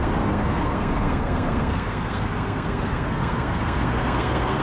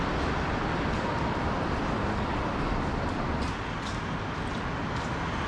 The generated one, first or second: first